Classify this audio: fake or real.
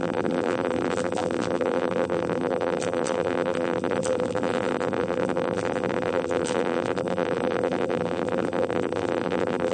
fake